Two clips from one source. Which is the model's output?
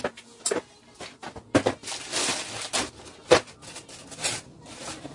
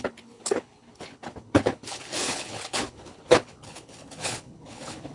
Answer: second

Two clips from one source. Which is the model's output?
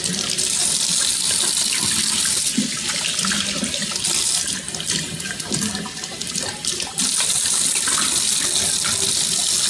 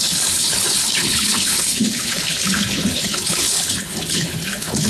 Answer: second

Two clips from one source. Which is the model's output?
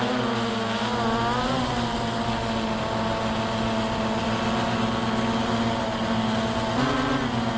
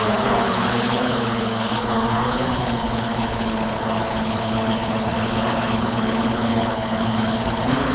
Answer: second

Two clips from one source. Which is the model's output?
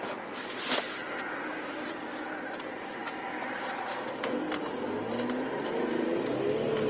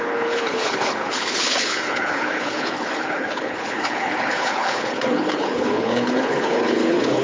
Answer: second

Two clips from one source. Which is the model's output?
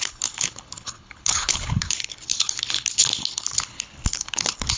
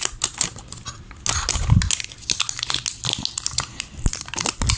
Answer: first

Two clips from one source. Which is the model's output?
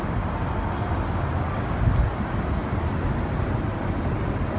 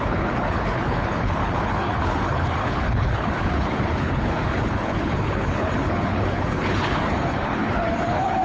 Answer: second